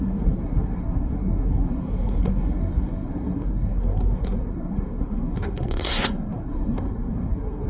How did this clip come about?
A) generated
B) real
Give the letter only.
A